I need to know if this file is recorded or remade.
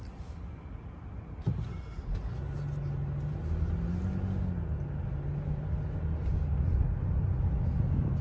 recorded